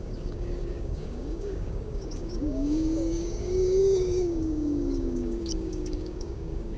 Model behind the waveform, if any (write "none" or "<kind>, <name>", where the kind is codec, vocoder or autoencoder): codec, DAC